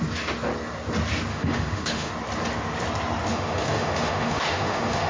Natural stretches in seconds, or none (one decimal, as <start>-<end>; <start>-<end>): 0.0-1.3; 2.1-3.3